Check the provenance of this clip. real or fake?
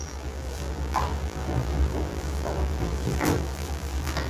fake